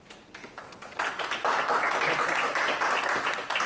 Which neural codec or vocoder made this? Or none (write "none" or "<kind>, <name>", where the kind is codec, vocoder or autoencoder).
none